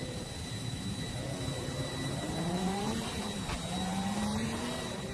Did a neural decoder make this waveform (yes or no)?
yes